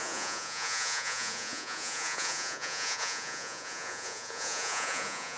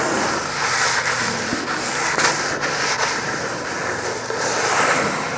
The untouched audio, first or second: second